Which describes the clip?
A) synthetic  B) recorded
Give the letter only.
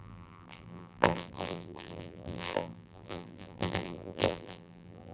A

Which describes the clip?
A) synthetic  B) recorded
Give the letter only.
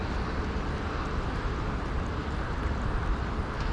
B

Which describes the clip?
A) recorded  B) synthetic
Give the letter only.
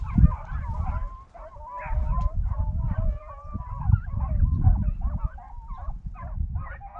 A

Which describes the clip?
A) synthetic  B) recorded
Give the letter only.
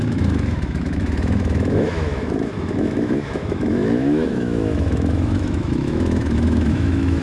A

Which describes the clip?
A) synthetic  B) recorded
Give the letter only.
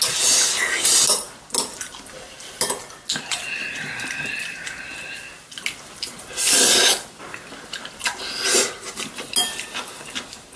B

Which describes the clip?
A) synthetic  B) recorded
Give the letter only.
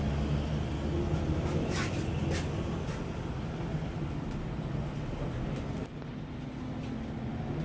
B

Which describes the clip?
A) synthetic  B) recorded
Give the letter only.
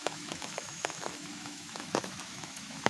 A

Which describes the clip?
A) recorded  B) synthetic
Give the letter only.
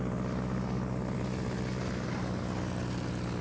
A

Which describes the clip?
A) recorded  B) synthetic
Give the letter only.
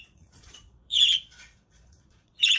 B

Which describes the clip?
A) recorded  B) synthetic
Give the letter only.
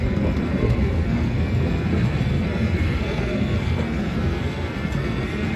B